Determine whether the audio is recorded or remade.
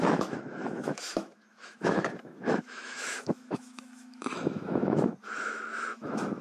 remade